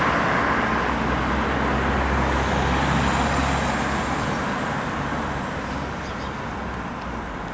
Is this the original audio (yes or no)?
yes